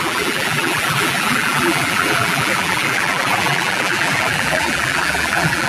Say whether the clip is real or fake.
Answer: fake